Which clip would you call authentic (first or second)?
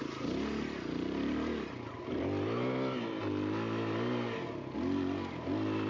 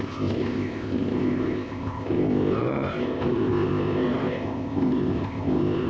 first